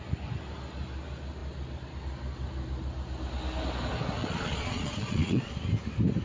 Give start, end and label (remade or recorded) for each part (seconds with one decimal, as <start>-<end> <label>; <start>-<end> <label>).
0.0-4.2 recorded; 4.2-5.5 remade; 5.5-6.2 recorded